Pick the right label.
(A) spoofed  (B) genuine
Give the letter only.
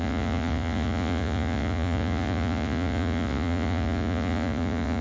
A